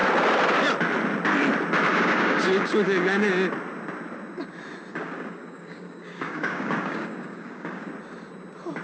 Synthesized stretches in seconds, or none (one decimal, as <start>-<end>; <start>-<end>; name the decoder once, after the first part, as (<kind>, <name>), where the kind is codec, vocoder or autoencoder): 1.9-3.3 (codec, DAC); 4.9-7.9